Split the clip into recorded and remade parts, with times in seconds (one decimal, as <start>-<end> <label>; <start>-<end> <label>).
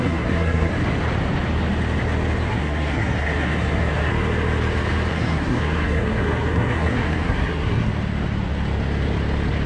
0.0-0.7 remade; 0.7-2.5 recorded; 2.5-4.1 remade; 4.1-5.1 recorded; 5.1-7.9 remade; 7.9-9.7 recorded